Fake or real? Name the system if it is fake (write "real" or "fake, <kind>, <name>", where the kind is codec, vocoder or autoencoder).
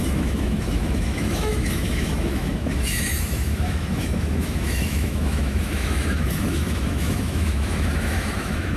fake, autoencoder, DAC-VAE